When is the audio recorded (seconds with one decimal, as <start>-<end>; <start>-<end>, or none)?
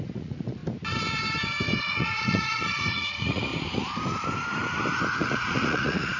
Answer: 0.6-1.8; 3.5-5.2